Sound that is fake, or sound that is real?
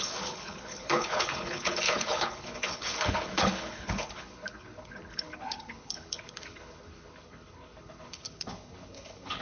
fake